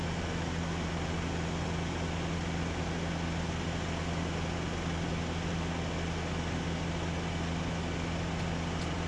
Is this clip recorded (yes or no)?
yes